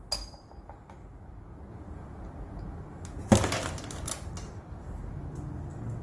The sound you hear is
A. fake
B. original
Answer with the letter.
B